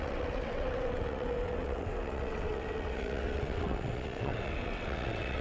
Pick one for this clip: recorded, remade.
remade